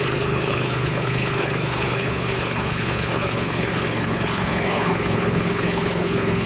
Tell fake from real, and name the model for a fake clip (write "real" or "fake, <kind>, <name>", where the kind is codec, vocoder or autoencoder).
fake, codec, HILCodec